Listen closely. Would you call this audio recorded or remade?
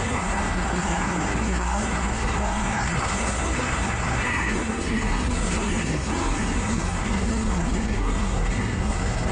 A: remade